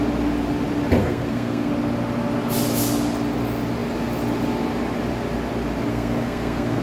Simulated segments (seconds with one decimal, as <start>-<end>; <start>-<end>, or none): 1.0-1.7; 5.9-6.8